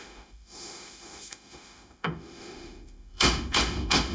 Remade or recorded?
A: remade